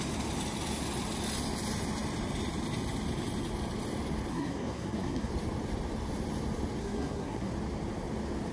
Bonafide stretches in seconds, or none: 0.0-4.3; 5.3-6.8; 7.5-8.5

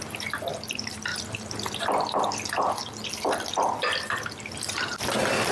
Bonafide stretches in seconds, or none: 0.0-5.5

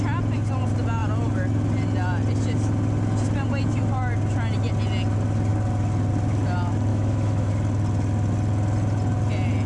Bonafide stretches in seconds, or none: 0.0-6.9; 7.5-9.7

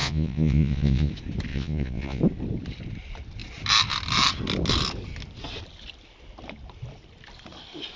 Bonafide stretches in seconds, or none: 1.1-1.5; 2.2-8.0

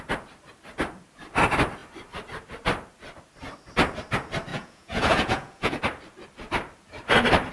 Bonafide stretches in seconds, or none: 0.0-4.5; 5.8-7.5

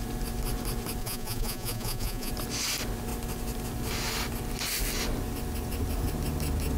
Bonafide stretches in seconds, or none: 0.0-1.0; 2.3-6.8